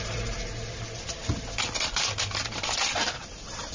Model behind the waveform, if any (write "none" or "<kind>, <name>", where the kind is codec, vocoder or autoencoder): none